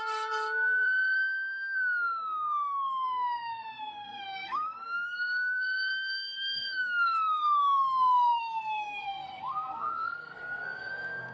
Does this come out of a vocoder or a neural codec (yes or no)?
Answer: yes